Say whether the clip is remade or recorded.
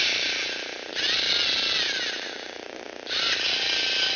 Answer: recorded